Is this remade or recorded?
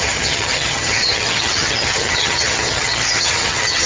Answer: remade